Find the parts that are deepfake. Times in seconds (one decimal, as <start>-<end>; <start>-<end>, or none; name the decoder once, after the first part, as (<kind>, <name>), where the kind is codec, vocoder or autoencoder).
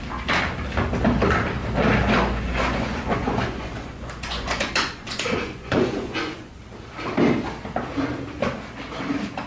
2.0-6.6 (vocoder, Vocos)